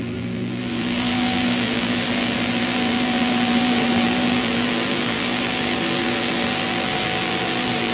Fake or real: fake